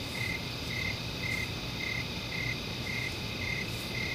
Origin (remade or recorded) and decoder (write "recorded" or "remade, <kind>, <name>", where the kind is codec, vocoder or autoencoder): remade, vocoder, BigVGAN v2